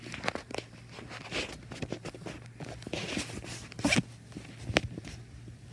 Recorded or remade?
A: recorded